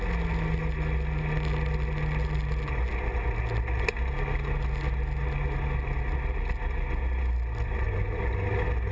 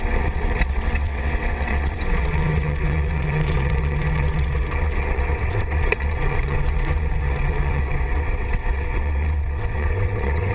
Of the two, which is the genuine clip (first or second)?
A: first